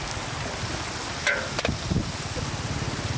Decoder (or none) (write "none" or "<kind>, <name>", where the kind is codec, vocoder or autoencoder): none